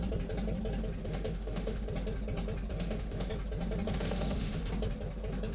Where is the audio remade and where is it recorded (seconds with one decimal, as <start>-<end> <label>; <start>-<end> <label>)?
0.0-1.0 recorded; 1.0-1.9 remade; 1.9-2.7 recorded; 2.7-3.3 remade; 3.3-3.9 recorded; 3.9-4.6 remade; 4.6-5.5 recorded